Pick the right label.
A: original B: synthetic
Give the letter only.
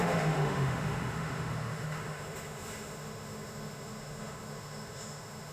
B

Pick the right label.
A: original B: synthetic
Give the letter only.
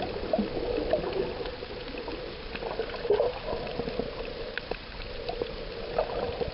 A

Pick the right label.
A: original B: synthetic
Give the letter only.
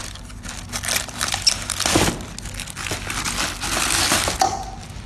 A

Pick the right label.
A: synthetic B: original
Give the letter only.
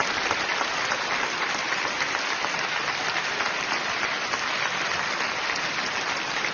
B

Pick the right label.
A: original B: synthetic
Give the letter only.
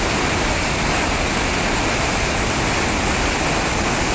A